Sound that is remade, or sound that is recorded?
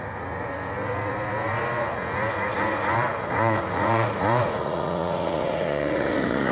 remade